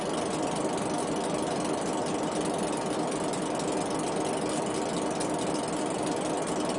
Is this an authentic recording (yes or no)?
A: yes